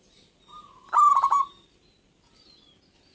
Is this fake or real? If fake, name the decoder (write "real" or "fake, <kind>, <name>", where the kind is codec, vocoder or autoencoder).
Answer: real